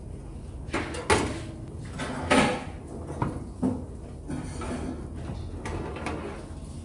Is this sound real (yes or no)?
yes